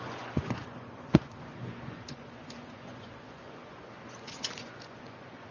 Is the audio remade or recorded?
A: remade